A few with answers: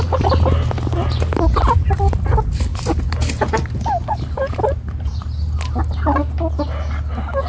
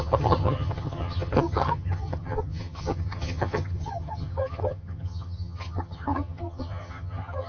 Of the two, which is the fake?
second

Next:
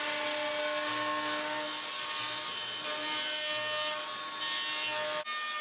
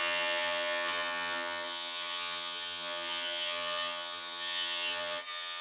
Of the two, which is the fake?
second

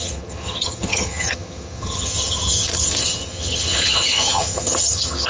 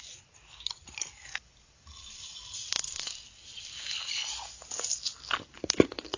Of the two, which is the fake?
first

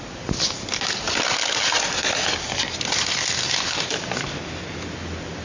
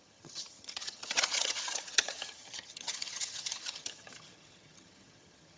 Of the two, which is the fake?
second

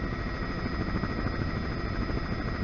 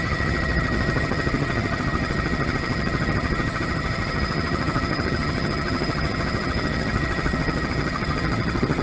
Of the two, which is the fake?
second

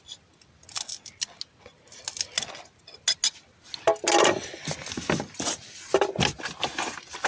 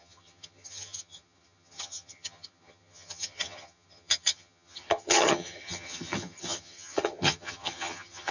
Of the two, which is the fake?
second